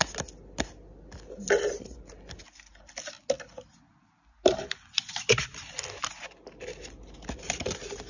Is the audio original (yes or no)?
yes